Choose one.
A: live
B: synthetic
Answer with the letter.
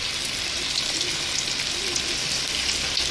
A